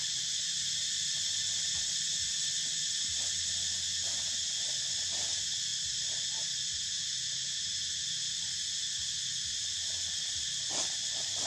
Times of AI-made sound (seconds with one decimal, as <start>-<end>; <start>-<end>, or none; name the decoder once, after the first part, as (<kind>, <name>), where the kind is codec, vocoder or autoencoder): none